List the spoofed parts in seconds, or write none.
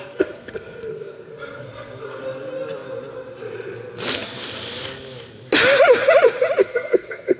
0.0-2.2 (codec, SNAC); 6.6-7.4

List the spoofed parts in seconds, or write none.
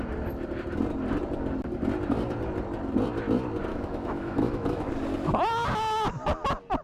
3.7-4.9 (autoencoder, DAC-VAE)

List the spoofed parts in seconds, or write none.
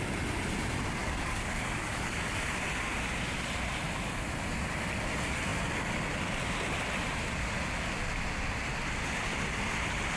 1.0-2.6 (codec, DAC)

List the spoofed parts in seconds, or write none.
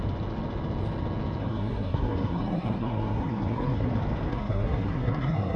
1.4-3.9 (codec, SNAC); 4.3-5.6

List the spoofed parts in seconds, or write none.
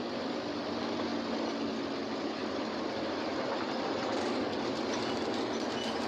none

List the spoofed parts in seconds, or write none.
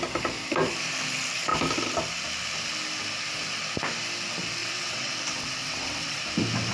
4.6-5.1 (vocoder, WaveNeXt); 5.6-6.2